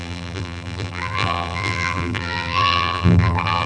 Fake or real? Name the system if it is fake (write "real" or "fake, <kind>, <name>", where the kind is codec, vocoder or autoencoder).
fake, vocoder, BigVGAN v2